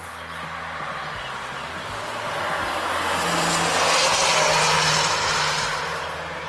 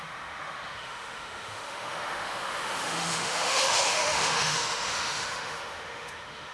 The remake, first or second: second